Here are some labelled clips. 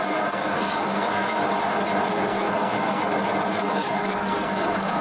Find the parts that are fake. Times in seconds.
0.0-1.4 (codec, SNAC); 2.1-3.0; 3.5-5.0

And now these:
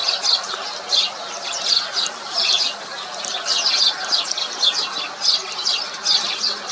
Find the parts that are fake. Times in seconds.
none

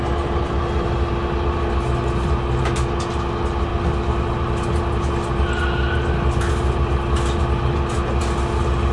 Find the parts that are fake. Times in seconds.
none

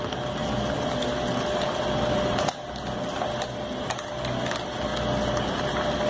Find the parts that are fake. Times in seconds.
none

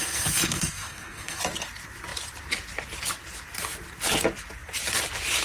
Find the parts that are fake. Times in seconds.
0.0-1.4 (codec, SNAC)

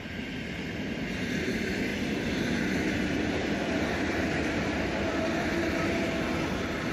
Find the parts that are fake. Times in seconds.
none

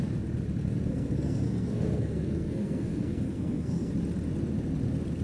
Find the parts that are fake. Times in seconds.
0.9-3.9 (codec, SNAC)